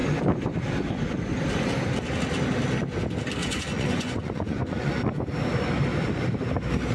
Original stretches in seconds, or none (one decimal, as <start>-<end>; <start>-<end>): 0.0-3.4; 5.0-6.9